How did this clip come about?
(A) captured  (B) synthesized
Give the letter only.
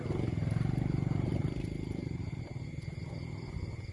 A